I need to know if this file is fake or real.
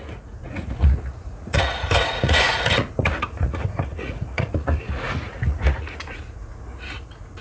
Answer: fake